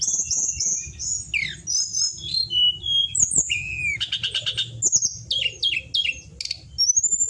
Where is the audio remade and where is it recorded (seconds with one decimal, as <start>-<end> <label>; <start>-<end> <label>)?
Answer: 0.0-3.0 recorded; 3.0-3.8 remade; 3.8-7.3 recorded